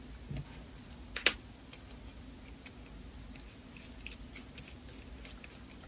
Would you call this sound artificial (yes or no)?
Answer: no